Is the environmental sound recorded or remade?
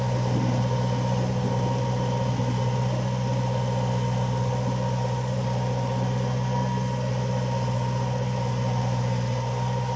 recorded